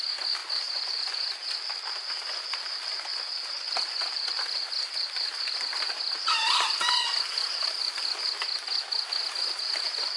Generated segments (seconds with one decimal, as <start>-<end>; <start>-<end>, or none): none